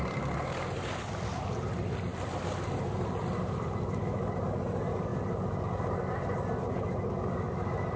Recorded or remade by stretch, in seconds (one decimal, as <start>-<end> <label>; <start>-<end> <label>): 0.0-8.0 recorded